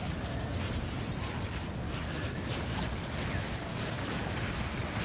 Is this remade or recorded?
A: recorded